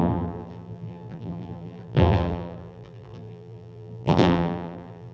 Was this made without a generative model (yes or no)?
no